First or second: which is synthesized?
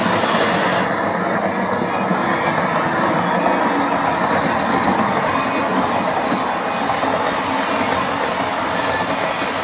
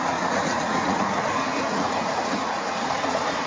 second